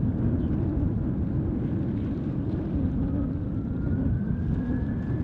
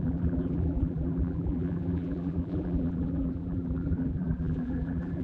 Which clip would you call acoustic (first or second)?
first